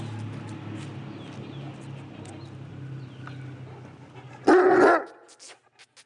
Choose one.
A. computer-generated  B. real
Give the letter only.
B